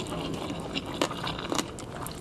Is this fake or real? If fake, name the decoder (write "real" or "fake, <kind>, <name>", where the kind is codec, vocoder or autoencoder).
real